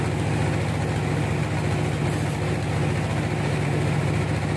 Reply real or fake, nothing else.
real